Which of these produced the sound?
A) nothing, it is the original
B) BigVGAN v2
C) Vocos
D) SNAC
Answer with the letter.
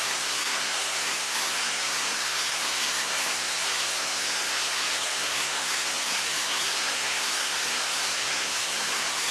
D